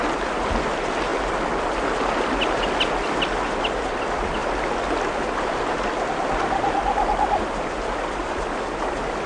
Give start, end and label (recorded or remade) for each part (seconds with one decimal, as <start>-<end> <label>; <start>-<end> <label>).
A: 0.0-9.3 recorded